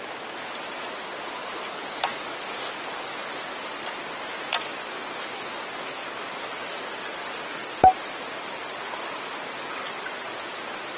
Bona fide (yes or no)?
yes